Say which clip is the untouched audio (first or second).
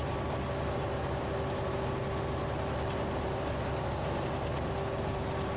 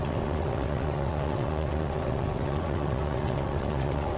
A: first